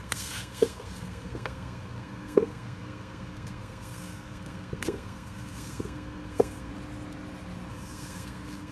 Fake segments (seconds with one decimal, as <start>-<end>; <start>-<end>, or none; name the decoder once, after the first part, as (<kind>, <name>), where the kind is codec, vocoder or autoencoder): 0.0-6.7 (codec, SNAC); 7.7-8.7